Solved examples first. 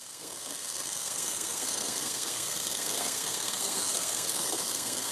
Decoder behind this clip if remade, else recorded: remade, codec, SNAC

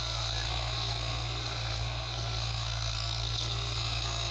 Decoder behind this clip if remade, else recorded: remade, codec, SNAC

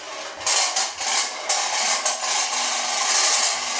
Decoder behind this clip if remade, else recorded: recorded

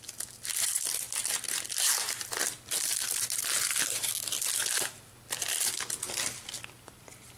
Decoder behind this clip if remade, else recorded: recorded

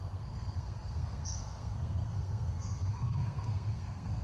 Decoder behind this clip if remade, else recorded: remade, codec, SNAC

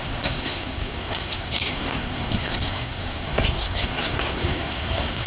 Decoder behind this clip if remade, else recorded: remade, codec, SNAC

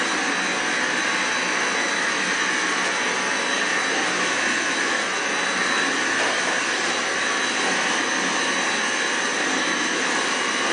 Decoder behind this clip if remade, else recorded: recorded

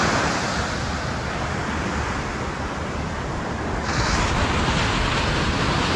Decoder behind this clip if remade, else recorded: recorded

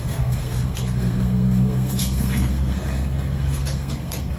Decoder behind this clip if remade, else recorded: remade, codec, SNAC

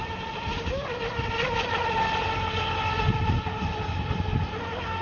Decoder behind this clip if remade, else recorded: recorded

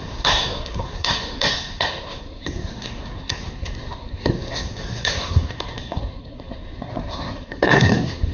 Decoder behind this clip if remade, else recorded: remade, codec, SNAC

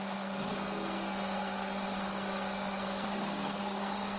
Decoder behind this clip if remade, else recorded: remade, codec, SNAC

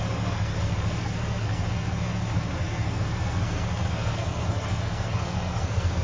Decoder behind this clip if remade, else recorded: remade, codec, SNAC